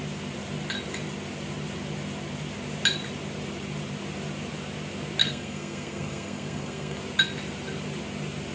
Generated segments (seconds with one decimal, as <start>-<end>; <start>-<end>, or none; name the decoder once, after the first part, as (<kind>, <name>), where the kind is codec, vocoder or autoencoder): 5.2-7.0 (codec, SNAC)